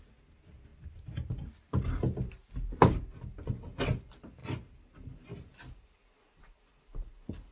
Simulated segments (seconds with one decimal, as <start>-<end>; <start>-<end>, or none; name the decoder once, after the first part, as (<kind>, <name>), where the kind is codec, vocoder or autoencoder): none